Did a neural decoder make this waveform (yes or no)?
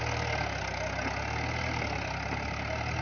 no